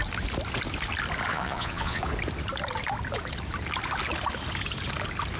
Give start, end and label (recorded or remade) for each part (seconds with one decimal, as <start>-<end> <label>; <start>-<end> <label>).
0.0-1.3 recorded; 1.3-2.0 remade; 2.0-5.4 recorded